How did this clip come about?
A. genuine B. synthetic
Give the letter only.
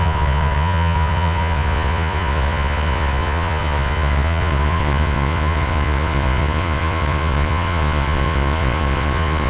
B